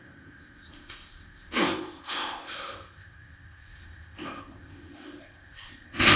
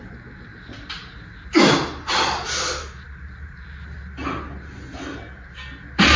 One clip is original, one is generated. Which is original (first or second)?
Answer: second